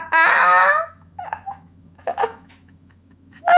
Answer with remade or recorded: remade